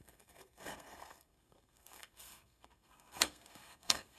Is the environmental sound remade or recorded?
remade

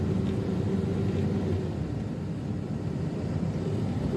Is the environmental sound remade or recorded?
recorded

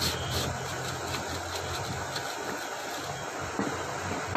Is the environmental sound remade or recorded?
recorded